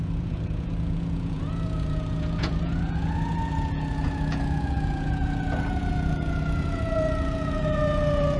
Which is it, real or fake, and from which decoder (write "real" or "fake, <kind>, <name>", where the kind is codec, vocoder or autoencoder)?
fake, vocoder, Vocos